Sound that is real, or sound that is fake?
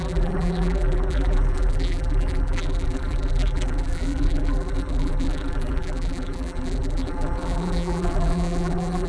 fake